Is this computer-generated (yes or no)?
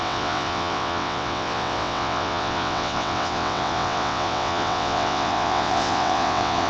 yes